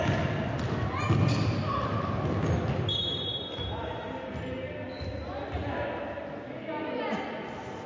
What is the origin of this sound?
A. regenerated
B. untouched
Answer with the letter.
B